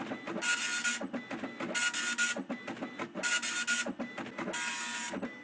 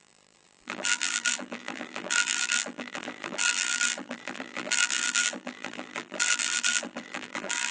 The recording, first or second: first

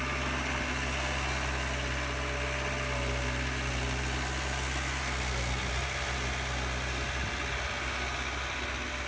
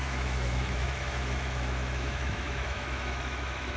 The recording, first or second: first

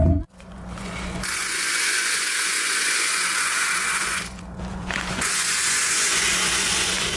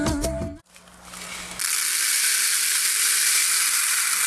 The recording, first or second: second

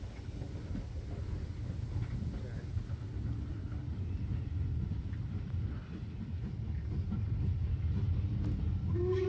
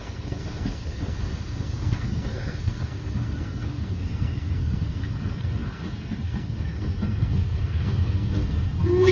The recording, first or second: first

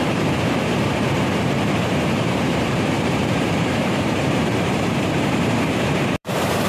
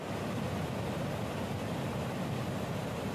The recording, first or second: second